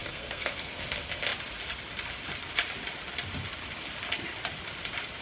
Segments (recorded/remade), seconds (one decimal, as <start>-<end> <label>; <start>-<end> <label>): 0.0-0.7 remade; 0.7-5.2 recorded